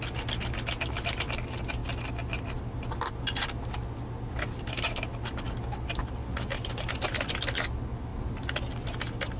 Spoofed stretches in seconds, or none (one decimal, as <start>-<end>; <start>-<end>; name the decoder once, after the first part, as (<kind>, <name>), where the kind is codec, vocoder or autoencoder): 6.2-6.9 (vocoder, BigVGAN v2); 8.1-9.0

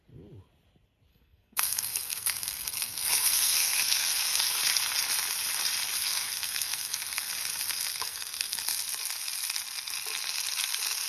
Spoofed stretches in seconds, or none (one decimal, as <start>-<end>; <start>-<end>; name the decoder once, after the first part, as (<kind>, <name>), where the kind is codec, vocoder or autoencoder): 1.1-4.6 (codec, SNAC); 6.0-7.3; 7.9-8.6

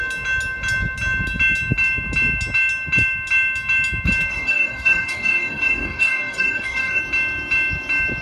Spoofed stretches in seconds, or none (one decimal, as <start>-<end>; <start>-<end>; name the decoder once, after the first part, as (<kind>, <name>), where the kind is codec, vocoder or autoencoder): 4.3-7.0 (codec, DAC)